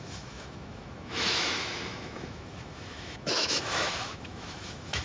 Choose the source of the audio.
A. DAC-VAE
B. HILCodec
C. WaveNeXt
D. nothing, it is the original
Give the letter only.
A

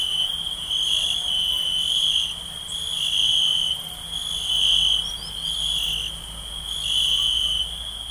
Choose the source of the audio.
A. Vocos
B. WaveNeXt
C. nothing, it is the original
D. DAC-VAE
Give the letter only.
C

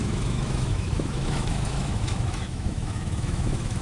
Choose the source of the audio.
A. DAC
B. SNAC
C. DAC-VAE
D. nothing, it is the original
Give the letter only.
C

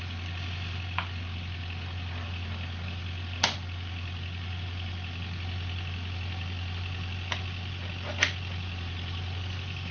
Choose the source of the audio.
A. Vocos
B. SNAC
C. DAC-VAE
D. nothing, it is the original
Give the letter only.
D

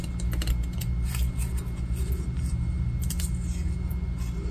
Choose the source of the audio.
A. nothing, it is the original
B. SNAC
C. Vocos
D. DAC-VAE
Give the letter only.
A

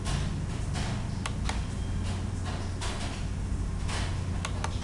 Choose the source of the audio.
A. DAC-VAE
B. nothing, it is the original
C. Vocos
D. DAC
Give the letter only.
B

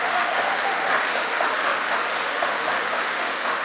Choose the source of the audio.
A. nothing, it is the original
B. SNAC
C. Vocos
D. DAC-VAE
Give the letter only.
D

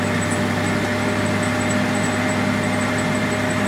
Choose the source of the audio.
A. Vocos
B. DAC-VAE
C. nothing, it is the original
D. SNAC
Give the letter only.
C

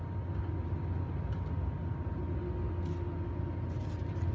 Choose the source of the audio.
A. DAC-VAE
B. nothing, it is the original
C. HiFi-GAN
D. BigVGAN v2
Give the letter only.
B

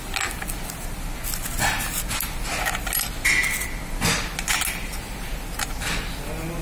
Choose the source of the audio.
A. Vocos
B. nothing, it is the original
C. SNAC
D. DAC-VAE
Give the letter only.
B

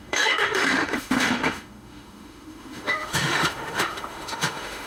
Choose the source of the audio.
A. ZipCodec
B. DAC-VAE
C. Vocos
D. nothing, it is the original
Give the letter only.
B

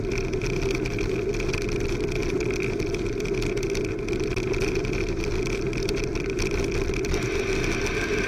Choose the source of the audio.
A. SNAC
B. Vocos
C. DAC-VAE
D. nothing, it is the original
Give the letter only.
D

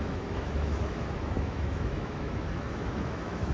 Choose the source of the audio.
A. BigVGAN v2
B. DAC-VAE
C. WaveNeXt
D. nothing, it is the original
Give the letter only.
B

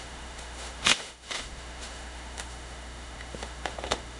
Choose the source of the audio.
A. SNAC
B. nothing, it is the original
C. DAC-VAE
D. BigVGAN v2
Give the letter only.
C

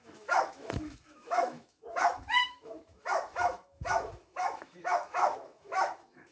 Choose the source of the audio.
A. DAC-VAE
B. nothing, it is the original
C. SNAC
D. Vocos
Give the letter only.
A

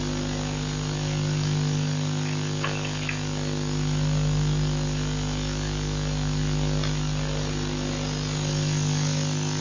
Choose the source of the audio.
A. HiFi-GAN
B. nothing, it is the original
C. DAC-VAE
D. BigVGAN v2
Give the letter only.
B